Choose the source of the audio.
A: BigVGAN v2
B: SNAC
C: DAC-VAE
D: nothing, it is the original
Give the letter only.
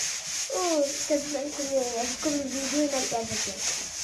D